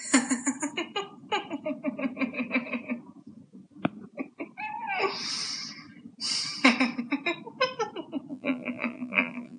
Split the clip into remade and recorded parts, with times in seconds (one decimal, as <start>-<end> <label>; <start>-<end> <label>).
0.0-8.3 recorded; 8.3-9.6 remade